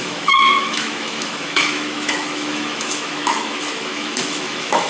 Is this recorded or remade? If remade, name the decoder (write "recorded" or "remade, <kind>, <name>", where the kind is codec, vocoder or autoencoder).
remade, autoencoder, DAC-VAE